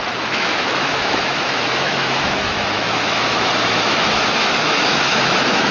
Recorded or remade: remade